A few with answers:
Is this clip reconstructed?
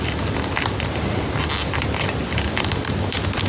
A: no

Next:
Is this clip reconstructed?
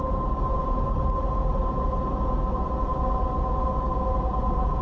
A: no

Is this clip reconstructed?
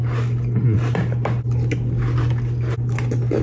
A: no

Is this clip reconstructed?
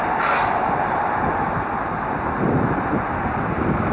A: no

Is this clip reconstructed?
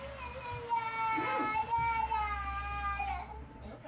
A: no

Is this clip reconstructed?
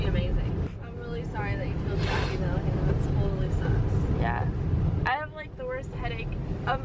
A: no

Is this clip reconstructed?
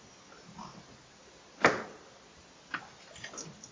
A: no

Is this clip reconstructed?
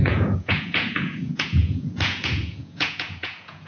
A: yes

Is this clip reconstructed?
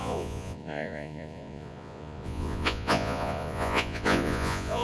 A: yes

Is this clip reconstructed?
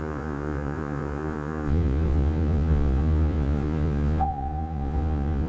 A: yes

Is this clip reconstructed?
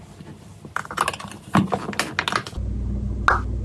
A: no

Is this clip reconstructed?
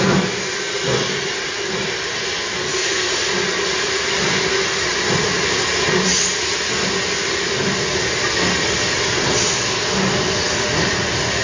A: no